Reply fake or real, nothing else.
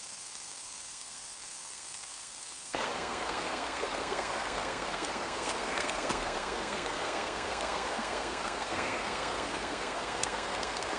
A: fake